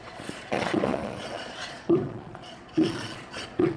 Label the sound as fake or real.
fake